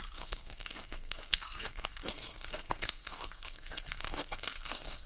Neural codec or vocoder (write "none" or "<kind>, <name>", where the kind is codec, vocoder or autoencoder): codec, SNAC